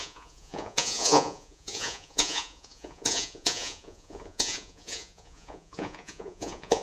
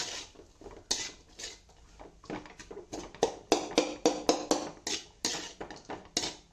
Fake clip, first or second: first